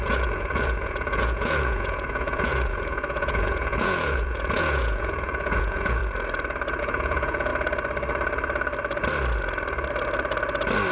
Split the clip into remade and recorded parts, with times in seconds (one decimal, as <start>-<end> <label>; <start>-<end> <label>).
0.0-6.0 remade; 6.0-6.8 recorded; 6.8-7.5 remade; 7.5-10.9 recorded